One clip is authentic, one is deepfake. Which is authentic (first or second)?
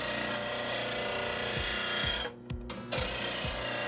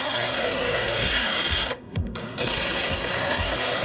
first